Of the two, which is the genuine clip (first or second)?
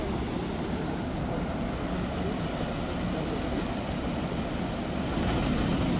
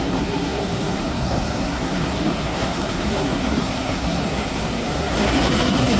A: first